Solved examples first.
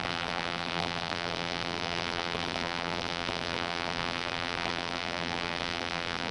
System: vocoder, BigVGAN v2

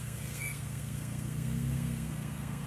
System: codec, SNAC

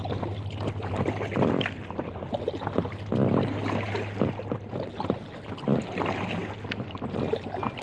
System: none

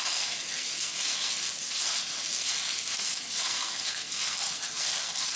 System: codec, SNAC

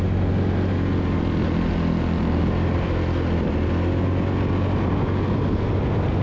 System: none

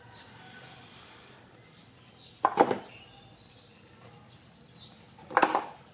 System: none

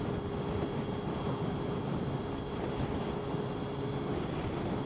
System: none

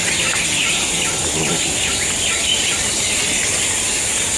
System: none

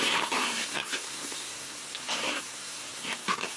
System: codec, SNAC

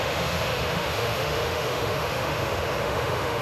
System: autoencoder, DAC-VAE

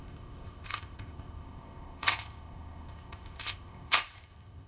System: codec, ZipCodec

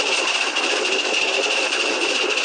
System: vocoder, BigVGAN v2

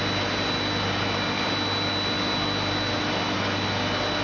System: none